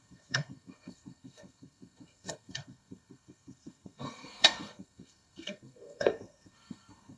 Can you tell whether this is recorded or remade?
remade